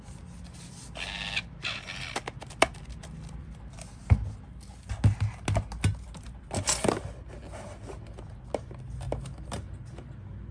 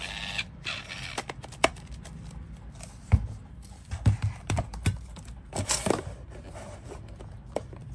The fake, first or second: second